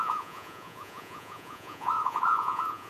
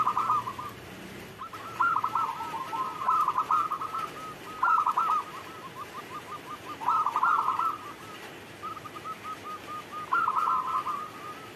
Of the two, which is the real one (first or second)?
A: second